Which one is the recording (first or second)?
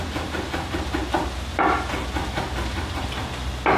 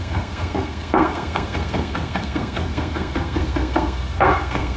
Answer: first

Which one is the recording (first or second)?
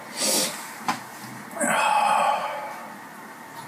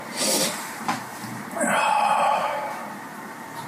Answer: first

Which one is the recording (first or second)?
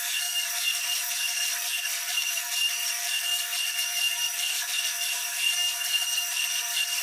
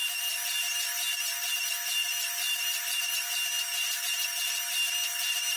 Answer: second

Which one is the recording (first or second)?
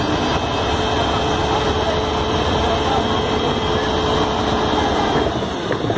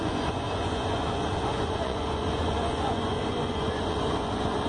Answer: first